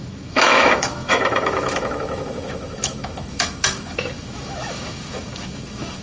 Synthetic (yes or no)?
yes